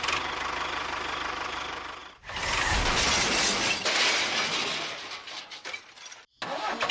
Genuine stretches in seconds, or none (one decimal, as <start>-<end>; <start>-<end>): 0.0-6.9